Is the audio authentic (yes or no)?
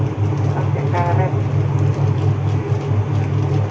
yes